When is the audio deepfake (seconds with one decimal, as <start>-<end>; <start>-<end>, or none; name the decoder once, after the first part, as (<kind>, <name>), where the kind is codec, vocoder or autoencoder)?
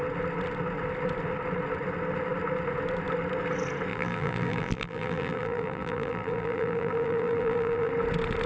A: 3.9-7.9 (vocoder, BigVGAN v2)